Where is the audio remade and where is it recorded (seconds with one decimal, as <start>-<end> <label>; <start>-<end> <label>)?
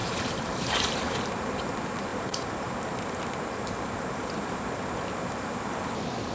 0.0-1.4 remade; 1.4-2.1 recorded; 2.1-4.9 remade; 4.9-6.3 recorded